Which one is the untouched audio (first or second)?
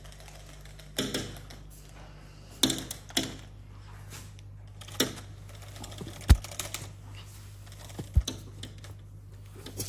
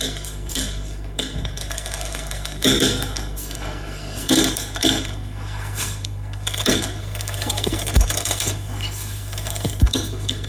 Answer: first